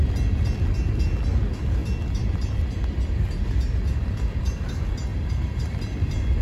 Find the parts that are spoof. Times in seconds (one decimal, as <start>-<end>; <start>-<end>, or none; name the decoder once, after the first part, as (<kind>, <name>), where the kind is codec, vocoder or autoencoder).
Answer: 5.1-5.8 (vocoder, BigVGAN v2)